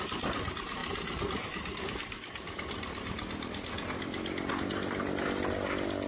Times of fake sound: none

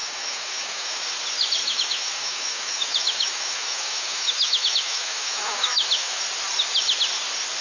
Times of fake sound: 0.0-1.0 (autoencoder, DAC-VAE); 1.6-6.2